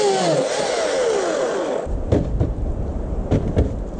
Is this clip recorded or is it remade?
recorded